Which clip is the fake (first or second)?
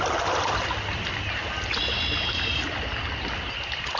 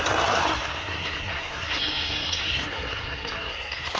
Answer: second